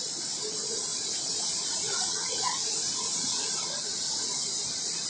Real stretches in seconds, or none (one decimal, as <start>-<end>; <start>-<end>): 0.0-0.9; 4.0-5.1